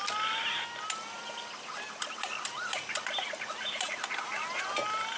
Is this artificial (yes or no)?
no